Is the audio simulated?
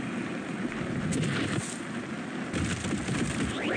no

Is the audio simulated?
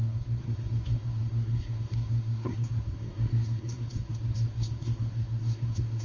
yes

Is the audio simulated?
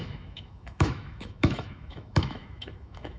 yes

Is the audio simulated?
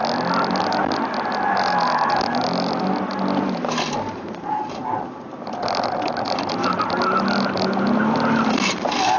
no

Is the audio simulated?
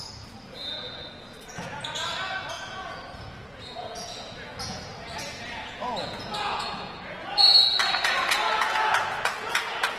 yes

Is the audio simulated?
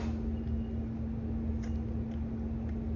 no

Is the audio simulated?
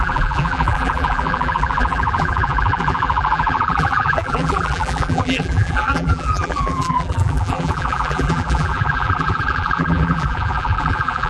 yes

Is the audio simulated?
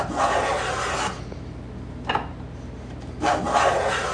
no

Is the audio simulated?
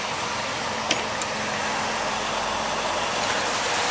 no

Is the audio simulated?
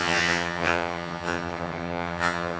yes